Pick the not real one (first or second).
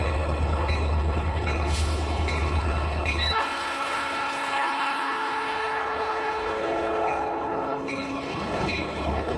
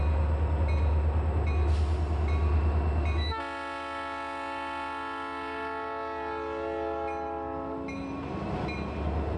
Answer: first